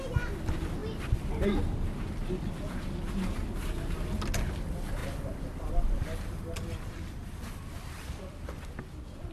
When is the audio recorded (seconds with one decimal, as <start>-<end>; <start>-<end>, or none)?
0.0-5.0; 8.6-9.3